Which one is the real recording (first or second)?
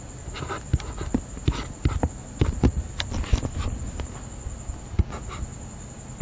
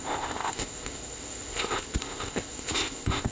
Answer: first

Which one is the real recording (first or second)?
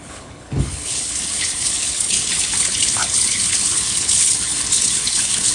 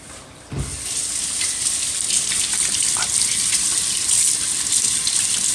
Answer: second